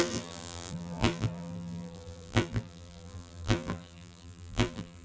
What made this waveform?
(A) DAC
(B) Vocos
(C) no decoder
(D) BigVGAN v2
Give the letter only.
D